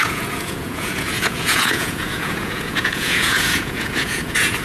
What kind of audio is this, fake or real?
fake